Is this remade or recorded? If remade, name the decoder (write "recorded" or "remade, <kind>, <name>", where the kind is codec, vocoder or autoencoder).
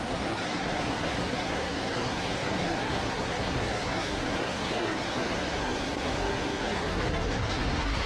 remade, codec, SNAC